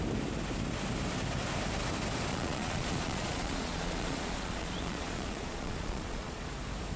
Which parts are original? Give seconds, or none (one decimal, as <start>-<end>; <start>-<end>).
0.0-2.3; 6.5-7.0